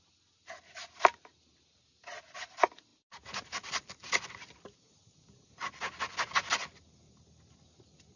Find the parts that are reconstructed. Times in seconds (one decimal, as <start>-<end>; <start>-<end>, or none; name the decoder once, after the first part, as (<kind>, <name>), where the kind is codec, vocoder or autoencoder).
none